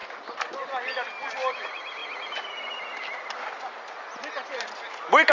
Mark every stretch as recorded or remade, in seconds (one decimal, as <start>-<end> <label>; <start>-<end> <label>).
0.0-5.3 recorded